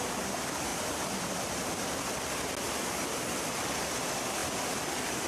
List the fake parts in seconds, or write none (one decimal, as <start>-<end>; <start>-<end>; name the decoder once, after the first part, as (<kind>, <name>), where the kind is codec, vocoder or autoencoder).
none